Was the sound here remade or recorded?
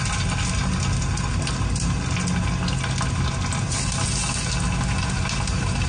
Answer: recorded